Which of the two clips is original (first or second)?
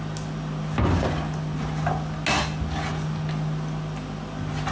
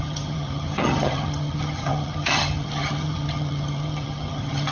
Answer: first